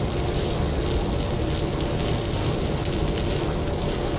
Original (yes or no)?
yes